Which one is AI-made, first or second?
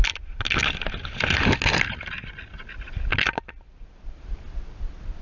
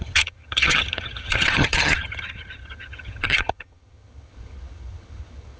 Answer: second